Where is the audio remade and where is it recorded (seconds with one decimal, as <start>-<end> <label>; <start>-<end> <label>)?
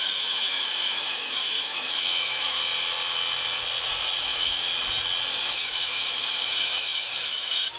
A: 0.0-2.6 remade; 2.6-4.2 recorded; 4.2-4.7 remade; 4.7-5.5 recorded; 5.5-7.8 remade